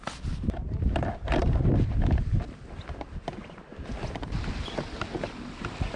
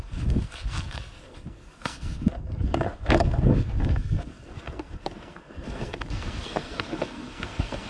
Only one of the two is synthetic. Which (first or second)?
second